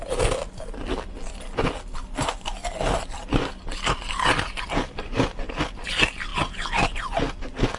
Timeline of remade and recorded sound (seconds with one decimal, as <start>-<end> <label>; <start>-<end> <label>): 0.0-7.8 recorded